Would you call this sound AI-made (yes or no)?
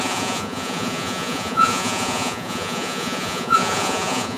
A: yes